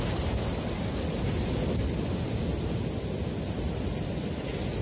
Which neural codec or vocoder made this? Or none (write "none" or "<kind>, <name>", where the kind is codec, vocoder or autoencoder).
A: none